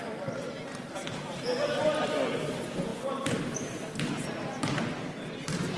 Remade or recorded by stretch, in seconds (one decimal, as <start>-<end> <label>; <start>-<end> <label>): 0.0-5.8 recorded